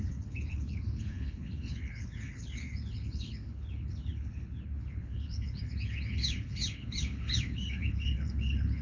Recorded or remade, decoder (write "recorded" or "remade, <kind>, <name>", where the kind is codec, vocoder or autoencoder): remade, codec, HILCodec